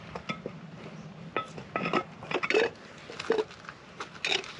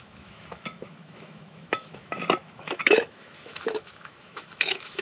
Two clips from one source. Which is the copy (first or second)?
second